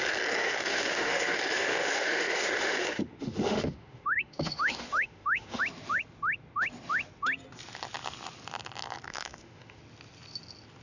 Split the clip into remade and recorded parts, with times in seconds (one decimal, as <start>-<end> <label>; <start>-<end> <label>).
0.0-0.4 recorded; 0.4-5.6 remade; 5.6-9.1 recorded; 9.1-9.8 remade; 9.8-10.8 recorded